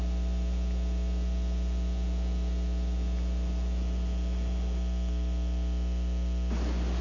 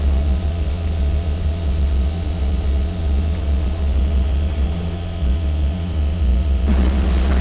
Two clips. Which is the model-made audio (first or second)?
second